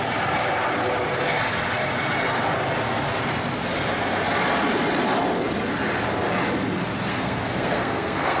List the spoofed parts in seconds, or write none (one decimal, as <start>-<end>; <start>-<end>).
7.1-8.4